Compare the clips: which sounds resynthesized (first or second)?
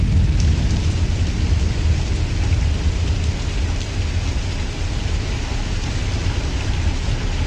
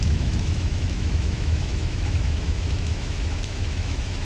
second